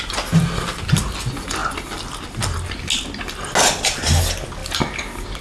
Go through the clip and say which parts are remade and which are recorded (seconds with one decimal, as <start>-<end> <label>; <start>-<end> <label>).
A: 0.0-5.4 recorded